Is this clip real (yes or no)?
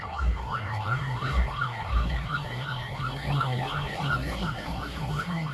no